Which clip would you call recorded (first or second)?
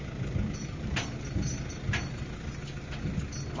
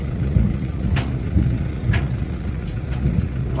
first